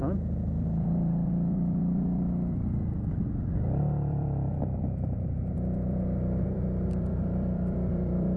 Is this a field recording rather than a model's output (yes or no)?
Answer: no